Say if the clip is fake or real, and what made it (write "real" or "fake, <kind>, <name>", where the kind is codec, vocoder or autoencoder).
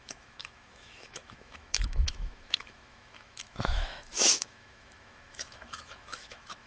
fake, autoencoder, DAC-VAE